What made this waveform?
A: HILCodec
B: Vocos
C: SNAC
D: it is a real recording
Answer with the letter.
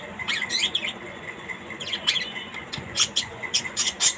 B